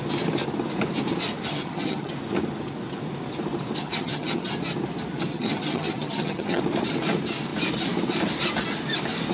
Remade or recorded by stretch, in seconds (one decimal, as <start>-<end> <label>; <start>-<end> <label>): 0.0-1.5 recorded; 1.5-2.1 remade; 2.1-3.8 recorded; 3.8-4.5 remade; 4.5-5.3 recorded; 5.3-6.6 remade; 6.6-9.3 recorded